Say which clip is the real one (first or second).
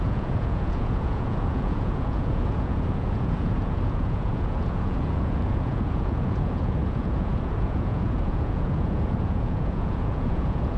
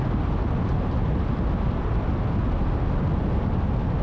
second